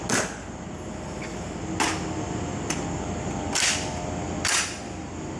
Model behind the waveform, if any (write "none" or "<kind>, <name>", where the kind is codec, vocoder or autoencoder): none